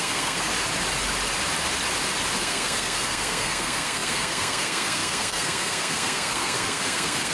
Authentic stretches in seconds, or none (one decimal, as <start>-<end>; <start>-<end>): 0.5-2.4